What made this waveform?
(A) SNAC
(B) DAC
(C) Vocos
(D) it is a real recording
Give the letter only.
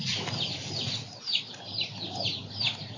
D